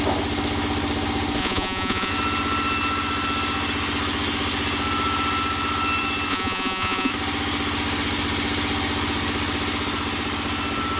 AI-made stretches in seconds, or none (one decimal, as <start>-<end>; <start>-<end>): 1.4-2.1; 6.3-7.1